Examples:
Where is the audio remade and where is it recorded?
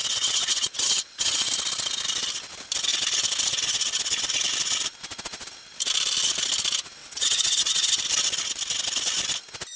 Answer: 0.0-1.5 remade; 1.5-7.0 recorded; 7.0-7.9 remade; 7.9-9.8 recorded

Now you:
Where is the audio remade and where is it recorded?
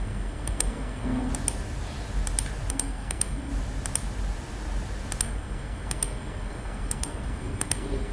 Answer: 0.0-1.3 remade; 1.3-2.7 recorded; 2.7-3.5 remade; 3.5-5.2 recorded; 5.2-8.1 remade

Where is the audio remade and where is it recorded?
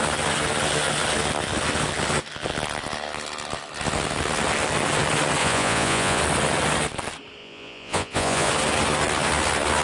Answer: 0.0-5.4 recorded; 5.4-6.2 remade; 6.2-7.4 recorded; 7.4-8.5 remade; 8.5-9.8 recorded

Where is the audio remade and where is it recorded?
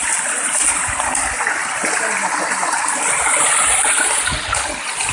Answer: 0.0-5.1 recorded